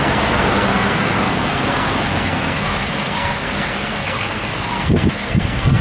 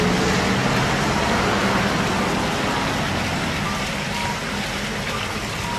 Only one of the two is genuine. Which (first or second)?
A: second